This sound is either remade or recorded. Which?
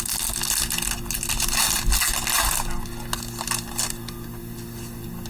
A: recorded